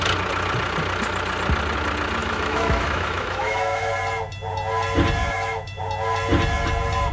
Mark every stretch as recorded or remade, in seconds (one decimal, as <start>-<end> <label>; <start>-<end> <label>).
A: 0.0-2.2 recorded; 2.2-3.9 remade; 3.9-5.2 recorded; 5.2-5.8 remade; 5.8-7.1 recorded